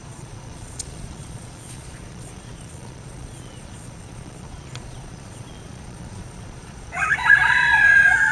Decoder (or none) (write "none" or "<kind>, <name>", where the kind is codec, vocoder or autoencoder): vocoder, Vocos